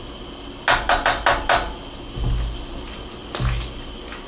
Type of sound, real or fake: real